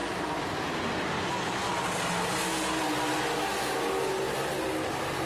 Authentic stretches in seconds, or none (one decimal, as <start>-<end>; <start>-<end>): 0.0-5.3